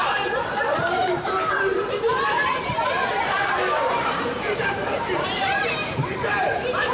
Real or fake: fake